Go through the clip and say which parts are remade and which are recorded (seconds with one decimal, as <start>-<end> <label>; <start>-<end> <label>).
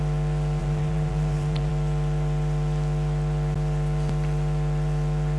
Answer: 0.0-0.6 recorded; 0.6-1.7 remade; 1.7-5.4 recorded